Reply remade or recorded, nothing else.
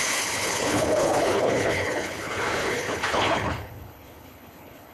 remade